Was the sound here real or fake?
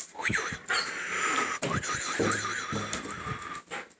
real